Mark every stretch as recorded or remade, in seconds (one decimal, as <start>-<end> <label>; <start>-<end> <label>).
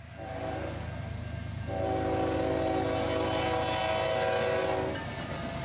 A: 0.0-5.6 recorded